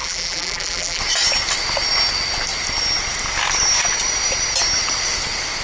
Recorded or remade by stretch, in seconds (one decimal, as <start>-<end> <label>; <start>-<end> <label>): 0.0-1.0 remade; 1.0-5.6 recorded